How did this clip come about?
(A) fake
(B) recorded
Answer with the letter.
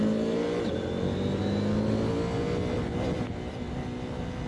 B